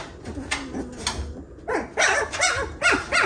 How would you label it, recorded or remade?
recorded